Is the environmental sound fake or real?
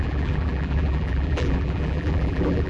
fake